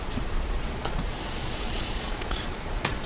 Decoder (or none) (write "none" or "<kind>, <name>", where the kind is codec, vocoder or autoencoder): vocoder, Vocos